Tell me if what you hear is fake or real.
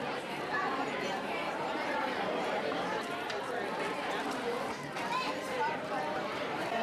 fake